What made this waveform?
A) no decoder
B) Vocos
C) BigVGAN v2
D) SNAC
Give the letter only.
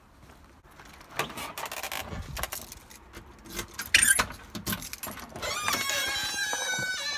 A